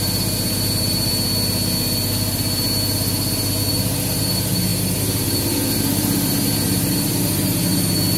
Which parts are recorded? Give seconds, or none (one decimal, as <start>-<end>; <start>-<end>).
1.1-3.7; 7.7-8.2